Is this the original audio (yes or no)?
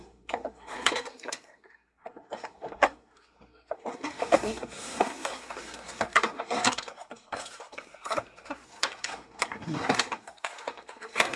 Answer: no